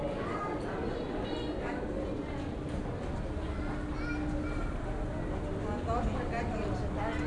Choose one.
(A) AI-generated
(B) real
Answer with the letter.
B